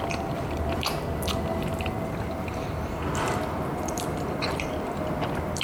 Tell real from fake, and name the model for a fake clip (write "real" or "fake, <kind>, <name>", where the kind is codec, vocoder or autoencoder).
fake, vocoder, BigVGAN v2